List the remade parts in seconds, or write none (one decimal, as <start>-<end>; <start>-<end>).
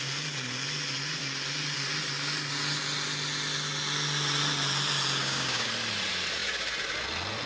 5.2-5.7